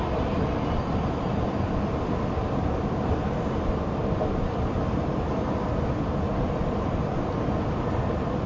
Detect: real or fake real